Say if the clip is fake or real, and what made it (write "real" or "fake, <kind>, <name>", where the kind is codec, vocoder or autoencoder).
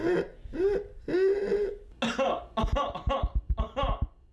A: real